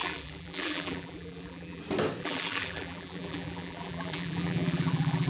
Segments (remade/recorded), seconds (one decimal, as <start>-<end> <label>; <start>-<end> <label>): 0.0-1.8 remade; 1.8-2.2 recorded; 2.2-5.3 remade